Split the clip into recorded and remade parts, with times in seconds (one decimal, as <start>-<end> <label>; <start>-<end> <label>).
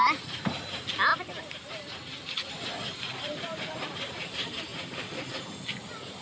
0.0-3.1 recorded; 3.1-4.3 remade; 4.3-4.7 recorded; 4.7-5.3 remade; 5.3-6.2 recorded